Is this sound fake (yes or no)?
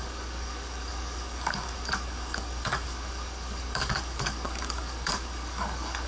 yes